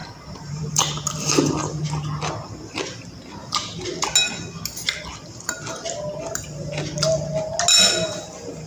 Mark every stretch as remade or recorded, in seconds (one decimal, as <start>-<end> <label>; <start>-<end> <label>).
0.0-1.5 remade; 1.5-8.7 recorded